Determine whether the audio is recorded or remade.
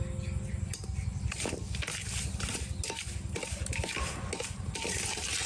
recorded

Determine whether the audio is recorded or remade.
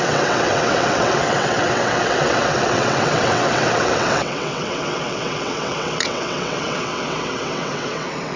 remade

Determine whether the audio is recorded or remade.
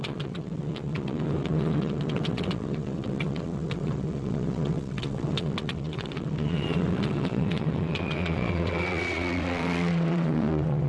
remade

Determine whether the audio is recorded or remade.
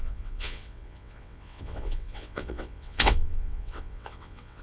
remade